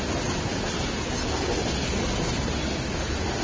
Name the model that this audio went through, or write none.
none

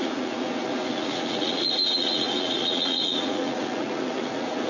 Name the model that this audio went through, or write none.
vocoder, Vocos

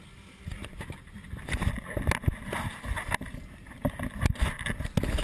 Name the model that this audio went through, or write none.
none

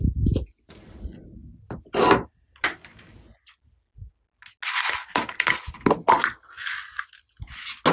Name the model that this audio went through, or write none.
none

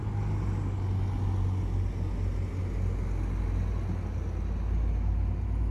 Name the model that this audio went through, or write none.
none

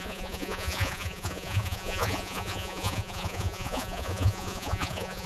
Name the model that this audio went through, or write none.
vocoder, Vocos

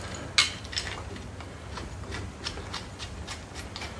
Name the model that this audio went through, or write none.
none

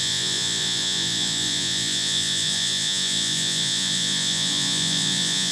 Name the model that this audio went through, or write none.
vocoder, Vocos